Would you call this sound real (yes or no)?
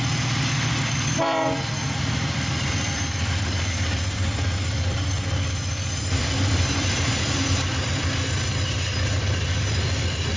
no